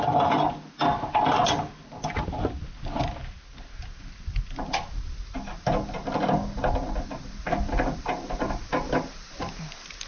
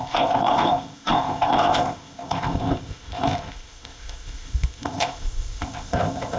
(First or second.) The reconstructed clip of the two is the second